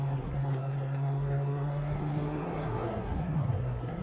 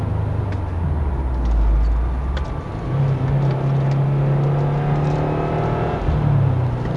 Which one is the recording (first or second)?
second